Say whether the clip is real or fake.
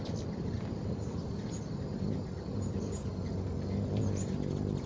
real